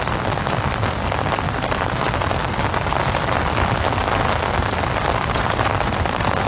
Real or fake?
real